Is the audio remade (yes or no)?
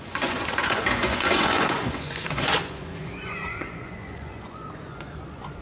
yes